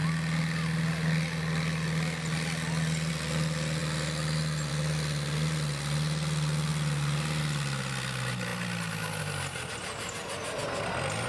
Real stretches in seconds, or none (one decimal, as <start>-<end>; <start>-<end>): 0.0-11.3